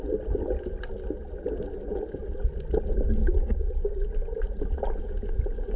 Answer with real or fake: real